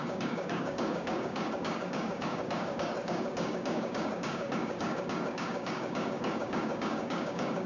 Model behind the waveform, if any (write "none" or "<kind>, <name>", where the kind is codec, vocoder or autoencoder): codec, DAC